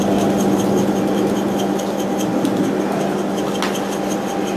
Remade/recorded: recorded